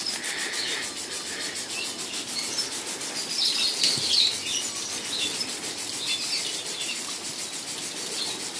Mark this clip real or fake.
real